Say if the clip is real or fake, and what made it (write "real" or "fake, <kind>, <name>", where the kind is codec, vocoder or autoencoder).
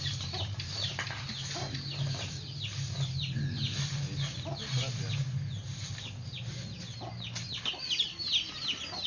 real